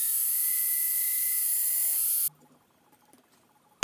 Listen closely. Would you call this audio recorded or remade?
recorded